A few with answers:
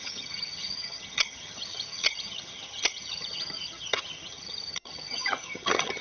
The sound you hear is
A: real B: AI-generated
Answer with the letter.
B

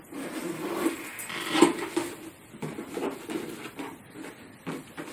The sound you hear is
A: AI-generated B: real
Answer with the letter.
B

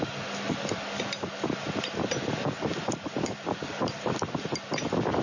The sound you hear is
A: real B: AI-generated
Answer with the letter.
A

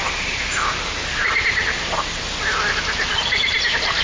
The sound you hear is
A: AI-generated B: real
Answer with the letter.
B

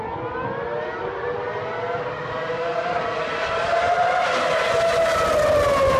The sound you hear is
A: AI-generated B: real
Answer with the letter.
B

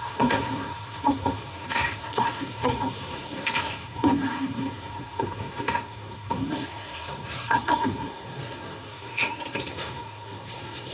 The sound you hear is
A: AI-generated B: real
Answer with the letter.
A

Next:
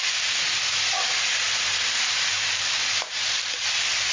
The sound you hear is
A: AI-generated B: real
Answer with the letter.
B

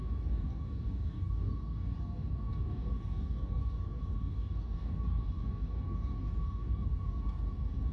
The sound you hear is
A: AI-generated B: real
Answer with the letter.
A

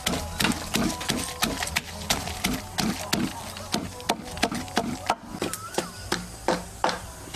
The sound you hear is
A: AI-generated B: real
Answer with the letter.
B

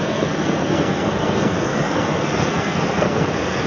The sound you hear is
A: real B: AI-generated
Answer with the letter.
B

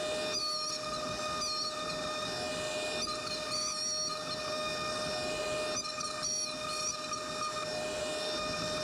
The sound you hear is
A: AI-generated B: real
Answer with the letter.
B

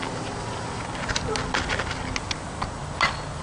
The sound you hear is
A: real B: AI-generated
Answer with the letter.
A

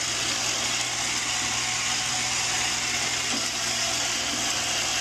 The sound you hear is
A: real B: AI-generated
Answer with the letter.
A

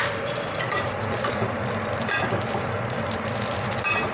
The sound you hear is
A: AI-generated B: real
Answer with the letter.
A